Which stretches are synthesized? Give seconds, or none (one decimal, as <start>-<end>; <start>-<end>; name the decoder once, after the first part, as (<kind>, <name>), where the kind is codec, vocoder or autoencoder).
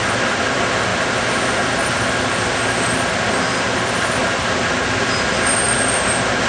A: none